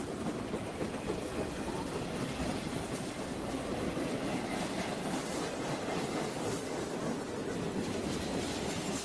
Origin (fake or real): real